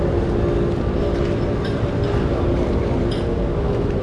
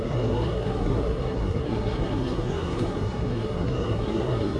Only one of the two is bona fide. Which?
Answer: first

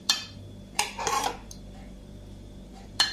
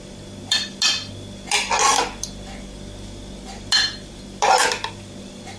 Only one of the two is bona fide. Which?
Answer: second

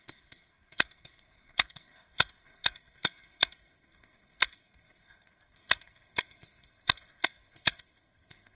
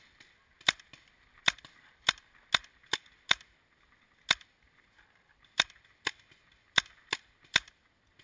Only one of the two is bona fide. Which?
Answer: second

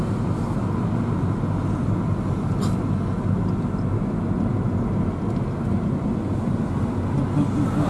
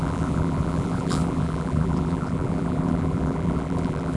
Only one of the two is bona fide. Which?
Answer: first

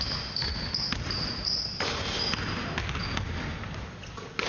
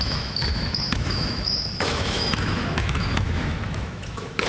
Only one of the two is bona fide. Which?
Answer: first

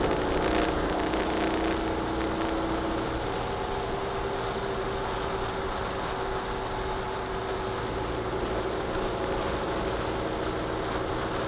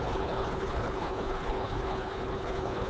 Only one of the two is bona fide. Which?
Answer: first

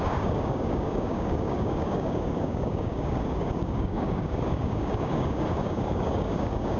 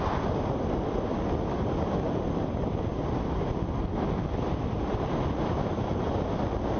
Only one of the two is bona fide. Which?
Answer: second